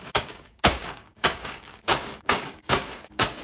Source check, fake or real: fake